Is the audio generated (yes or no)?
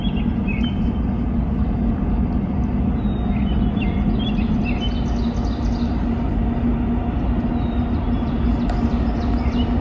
no